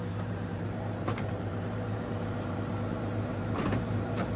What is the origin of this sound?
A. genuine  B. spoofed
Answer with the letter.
B